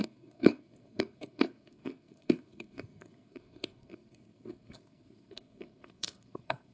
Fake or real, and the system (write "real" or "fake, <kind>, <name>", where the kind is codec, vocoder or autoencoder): fake, codec, SNAC